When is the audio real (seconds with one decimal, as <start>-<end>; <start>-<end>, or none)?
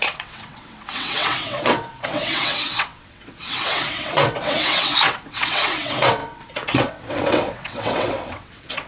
none